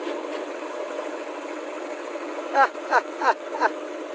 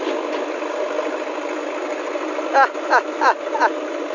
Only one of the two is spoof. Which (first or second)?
first